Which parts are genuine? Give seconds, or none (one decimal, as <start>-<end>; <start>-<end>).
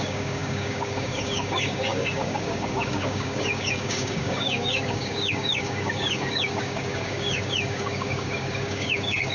none